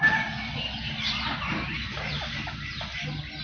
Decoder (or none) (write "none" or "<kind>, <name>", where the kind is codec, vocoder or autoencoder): vocoder, BigVGAN v2